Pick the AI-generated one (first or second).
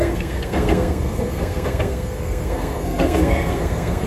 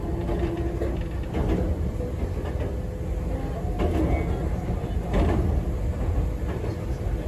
first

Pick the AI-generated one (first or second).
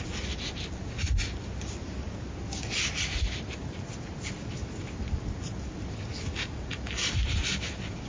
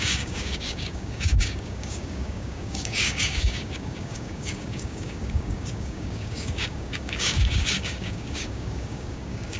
second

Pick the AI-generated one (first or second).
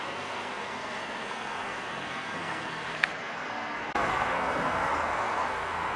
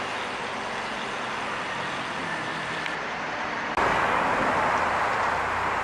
first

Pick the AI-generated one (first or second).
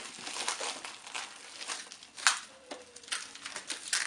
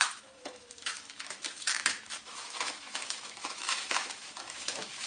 second